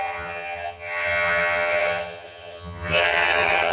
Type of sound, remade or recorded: remade